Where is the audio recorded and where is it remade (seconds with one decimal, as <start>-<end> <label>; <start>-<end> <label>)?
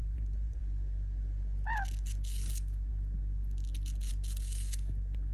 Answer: 0.0-0.6 remade; 0.6-5.3 recorded